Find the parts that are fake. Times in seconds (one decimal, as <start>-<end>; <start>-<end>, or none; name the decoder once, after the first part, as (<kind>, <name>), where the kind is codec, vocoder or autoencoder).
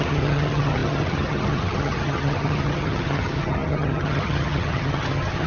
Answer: 0.0-5.5 (vocoder, HiFi-GAN)